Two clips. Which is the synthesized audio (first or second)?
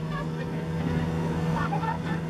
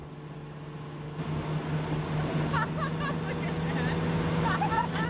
first